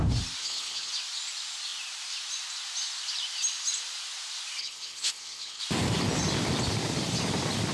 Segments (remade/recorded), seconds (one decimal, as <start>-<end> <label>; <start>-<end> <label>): 0.0-0.4 recorded; 0.4-0.9 remade; 0.9-4.6 recorded; 4.6-5.6 remade; 5.6-7.7 recorded